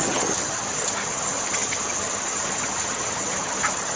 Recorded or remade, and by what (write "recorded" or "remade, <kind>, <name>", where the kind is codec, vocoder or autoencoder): remade, vocoder, HiFi-GAN